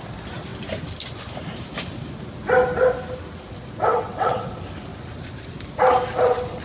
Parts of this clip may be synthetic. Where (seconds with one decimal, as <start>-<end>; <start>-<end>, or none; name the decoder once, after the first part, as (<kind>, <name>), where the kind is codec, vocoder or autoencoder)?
3.9-4.5 (vocoder, WaveNeXt)